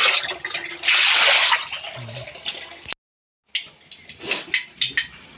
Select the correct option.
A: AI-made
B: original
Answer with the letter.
B